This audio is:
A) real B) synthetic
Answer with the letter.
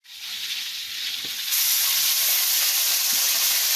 A